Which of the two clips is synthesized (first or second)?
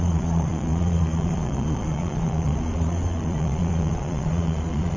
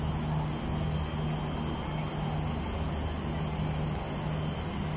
first